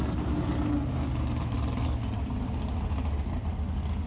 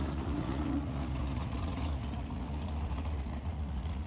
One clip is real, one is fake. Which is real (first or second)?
first